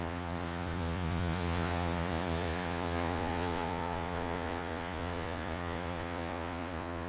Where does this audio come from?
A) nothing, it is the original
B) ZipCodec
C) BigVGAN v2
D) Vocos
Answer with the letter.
D